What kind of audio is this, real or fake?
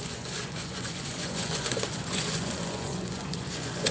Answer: fake